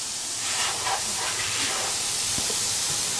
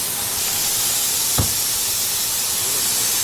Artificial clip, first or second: first